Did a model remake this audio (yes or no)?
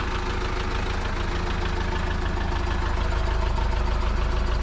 no